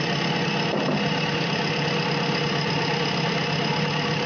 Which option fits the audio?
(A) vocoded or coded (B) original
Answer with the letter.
B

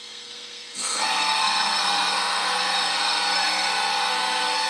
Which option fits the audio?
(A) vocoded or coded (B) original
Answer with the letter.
A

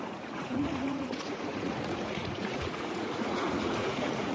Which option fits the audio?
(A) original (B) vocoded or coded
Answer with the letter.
B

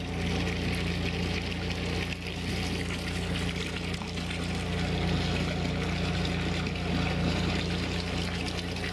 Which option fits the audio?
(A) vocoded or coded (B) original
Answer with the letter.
B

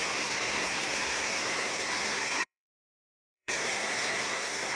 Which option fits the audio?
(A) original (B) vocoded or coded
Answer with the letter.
B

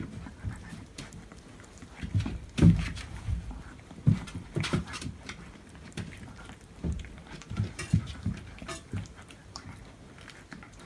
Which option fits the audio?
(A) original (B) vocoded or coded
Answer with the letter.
B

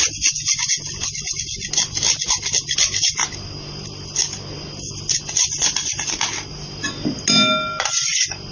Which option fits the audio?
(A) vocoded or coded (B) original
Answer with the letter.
B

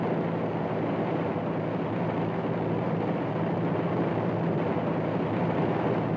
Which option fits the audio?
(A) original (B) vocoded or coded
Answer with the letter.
A